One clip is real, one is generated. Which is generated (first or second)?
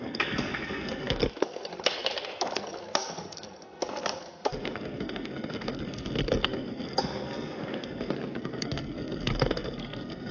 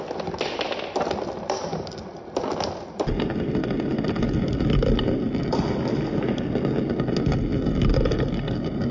first